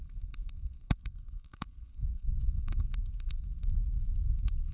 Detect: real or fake fake